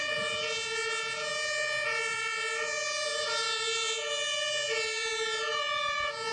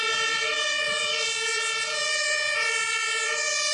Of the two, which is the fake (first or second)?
second